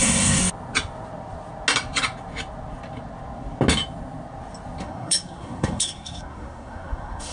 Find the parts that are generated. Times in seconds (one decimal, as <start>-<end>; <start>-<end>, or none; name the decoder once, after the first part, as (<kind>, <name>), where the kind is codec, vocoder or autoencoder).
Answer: 0.0-0.4 (codec, SNAC); 4.8-7.3